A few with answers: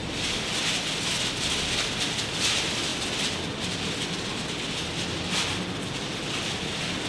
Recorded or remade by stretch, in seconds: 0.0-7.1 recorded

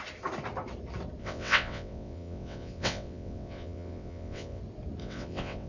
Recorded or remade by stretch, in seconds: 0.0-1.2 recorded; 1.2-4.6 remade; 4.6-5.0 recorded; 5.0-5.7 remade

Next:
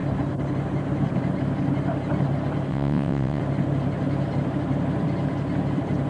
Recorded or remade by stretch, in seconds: 0.0-2.7 recorded; 2.7-3.4 remade; 3.4-6.1 recorded

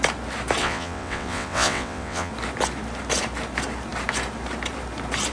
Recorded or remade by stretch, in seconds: 0.0-0.6 recorded; 0.6-2.3 remade; 2.3-5.3 recorded

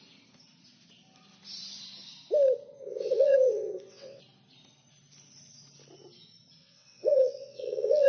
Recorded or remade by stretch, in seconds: 0.0-2.8 recorded; 2.8-4.2 remade; 4.2-6.6 recorded; 6.6-8.1 remade